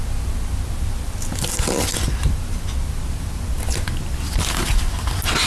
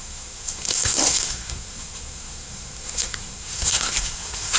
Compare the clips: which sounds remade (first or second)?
second